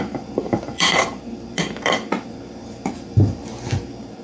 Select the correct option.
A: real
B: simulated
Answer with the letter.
B